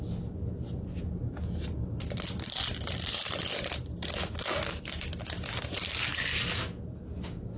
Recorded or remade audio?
recorded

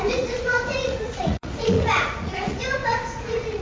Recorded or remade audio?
remade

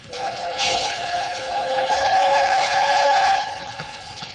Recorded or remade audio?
remade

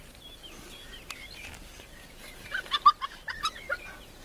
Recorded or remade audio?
recorded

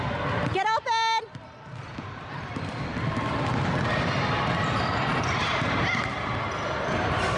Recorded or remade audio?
recorded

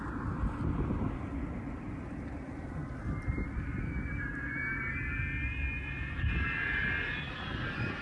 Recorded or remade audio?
recorded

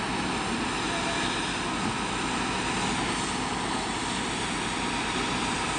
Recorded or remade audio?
recorded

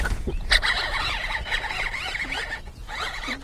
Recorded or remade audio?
remade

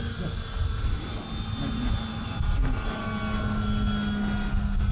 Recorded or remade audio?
recorded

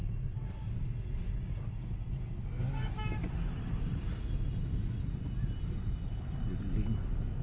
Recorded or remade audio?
recorded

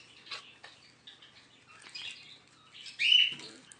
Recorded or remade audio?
recorded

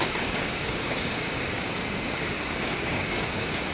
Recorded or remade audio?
remade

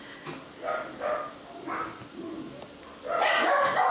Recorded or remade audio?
recorded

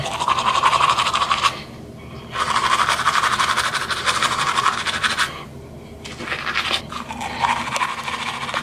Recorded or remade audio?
recorded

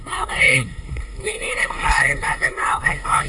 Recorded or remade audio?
remade